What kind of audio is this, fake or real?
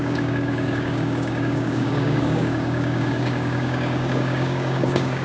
fake